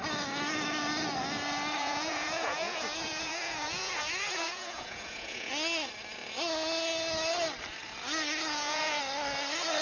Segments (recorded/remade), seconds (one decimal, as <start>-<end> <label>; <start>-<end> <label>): 0.0-1.8 recorded; 1.8-5.5 remade; 5.5-8.5 recorded; 8.5-9.0 remade; 9.0-9.8 recorded